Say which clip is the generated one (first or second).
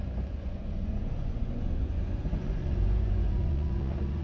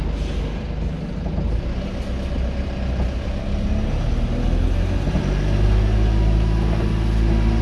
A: first